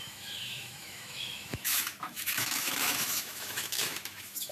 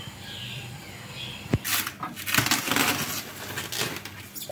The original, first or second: second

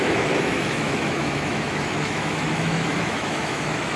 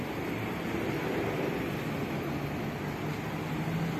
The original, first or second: second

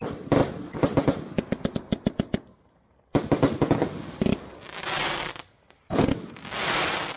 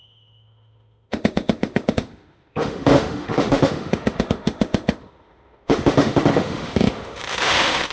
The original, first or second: first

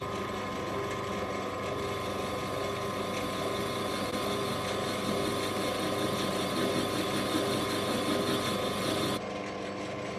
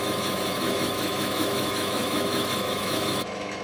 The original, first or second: first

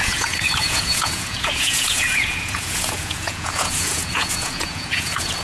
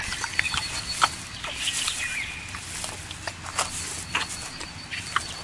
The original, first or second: second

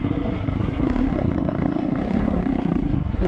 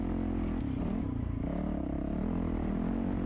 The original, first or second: second